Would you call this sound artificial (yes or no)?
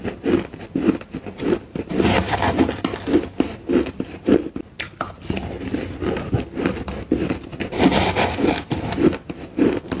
no